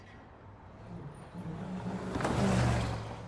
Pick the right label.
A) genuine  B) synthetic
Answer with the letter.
A